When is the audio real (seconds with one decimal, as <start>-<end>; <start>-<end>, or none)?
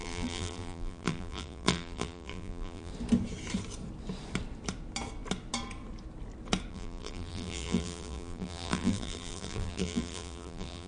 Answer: 2.9-6.7